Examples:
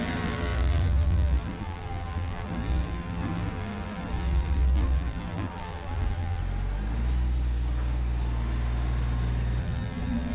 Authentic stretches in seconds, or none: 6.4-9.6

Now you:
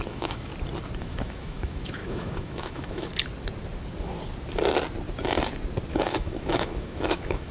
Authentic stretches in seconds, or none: 0.5-1.0; 3.1-5.9

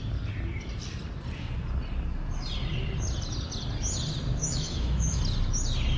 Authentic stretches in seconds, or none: 0.0-4.4; 5.2-6.0

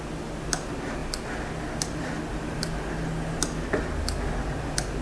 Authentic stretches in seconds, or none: 0.0-5.0

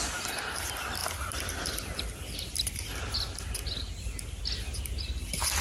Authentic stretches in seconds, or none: 0.0-5.6

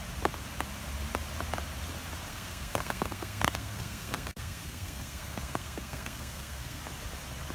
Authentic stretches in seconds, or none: 0.0-2.3; 6.8-7.5

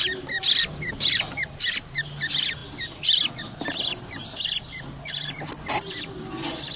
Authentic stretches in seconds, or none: 0.0-6.8

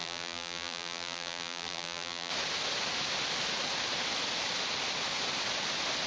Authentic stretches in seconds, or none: 2.3-6.1